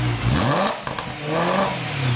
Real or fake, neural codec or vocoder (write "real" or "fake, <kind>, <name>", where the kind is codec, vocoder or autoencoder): real